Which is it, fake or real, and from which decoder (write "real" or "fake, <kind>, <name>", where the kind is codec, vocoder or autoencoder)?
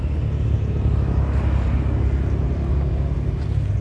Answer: real